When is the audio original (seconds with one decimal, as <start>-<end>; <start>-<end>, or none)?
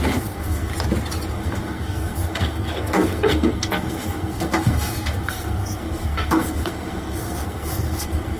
0.7-1.3